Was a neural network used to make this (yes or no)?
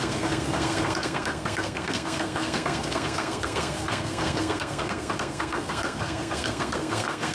yes